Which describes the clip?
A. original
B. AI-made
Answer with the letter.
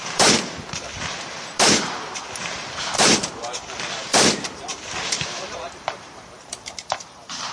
B